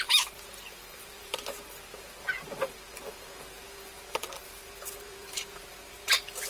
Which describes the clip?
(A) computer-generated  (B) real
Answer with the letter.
A